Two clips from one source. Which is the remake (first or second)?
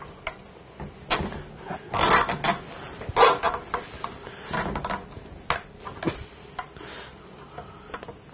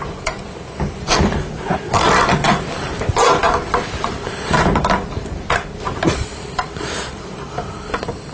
second